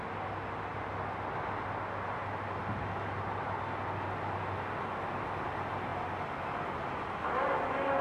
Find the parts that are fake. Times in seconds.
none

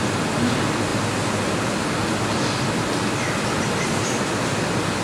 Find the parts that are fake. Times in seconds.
none

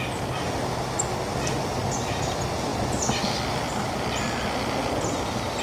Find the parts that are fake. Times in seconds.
none

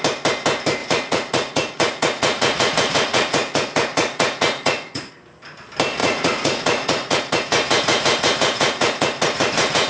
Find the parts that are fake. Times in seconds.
0.8-5.1 (vocoder, Vocos); 6.0-9.9

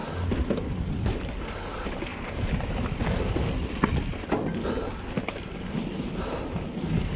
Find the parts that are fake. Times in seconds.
none

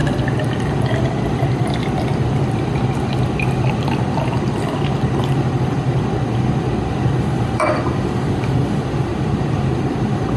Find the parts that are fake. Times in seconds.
5.2-10.4 (vocoder, BigVGAN v2)